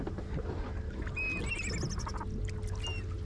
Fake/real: real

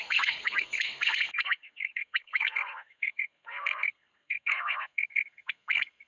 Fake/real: fake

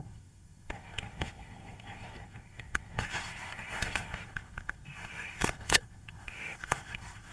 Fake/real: fake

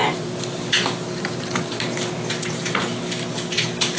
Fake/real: real